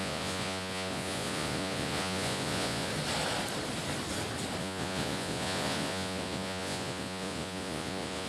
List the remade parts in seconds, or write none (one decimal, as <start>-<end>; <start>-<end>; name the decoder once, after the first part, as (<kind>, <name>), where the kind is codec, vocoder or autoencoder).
0.0-2.9 (vocoder, Vocos); 4.6-8.3